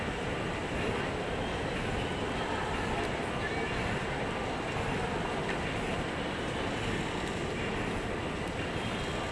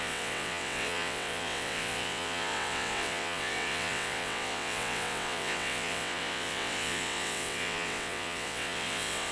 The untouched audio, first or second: first